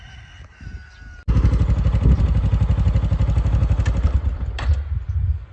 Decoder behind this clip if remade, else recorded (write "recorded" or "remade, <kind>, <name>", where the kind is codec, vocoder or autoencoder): recorded